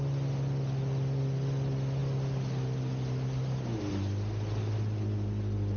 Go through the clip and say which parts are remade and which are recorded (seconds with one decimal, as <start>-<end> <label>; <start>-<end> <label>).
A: 0.0-5.8 recorded